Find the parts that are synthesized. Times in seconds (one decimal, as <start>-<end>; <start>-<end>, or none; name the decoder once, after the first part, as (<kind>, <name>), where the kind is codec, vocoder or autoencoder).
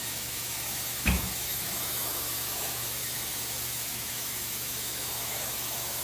0.0-6.0 (autoencoder, DAC-VAE)